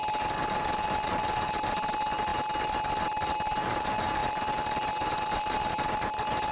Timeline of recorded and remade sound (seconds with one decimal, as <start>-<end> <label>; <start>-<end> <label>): 0.0-4.2 recorded; 4.2-5.7 remade; 5.7-6.5 recorded